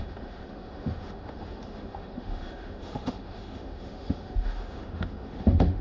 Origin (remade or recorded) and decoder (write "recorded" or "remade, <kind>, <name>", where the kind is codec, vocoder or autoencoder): remade, autoencoder, DAC-VAE